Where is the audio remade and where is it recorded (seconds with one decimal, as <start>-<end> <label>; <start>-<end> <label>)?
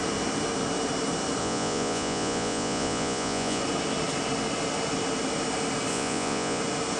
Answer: 0.0-1.4 recorded; 1.4-3.6 remade; 3.6-5.9 recorded; 5.9-6.6 remade; 6.6-7.0 recorded